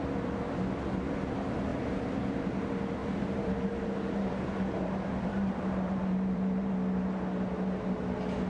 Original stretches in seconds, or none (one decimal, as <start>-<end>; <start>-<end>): 0.0-1.7; 2.3-3.0; 6.7-8.5